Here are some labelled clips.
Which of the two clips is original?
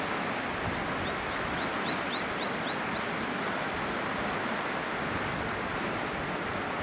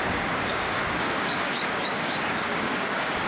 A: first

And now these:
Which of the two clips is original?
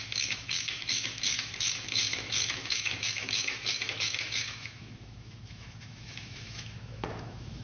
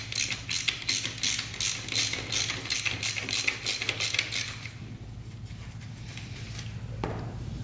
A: second